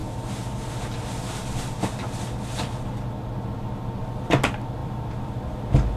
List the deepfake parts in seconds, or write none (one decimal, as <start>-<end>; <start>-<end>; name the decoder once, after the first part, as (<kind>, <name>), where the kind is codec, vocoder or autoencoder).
4.8-6.0 (vocoder, BigVGAN v2)